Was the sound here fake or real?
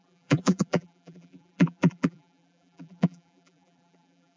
fake